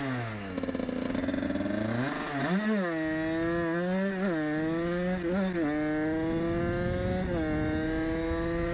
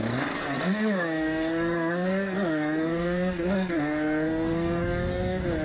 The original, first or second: first